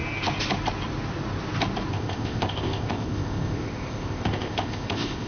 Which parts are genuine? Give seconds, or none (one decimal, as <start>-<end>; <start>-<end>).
0.0-1.9